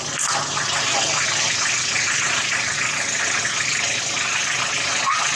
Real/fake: real